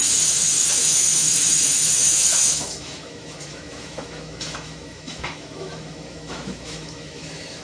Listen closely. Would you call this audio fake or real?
fake